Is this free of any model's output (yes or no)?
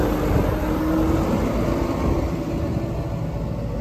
yes